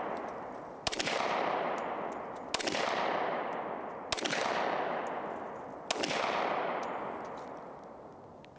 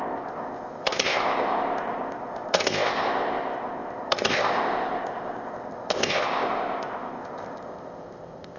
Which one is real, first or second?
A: first